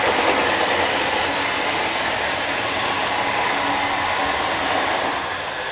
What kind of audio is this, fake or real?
real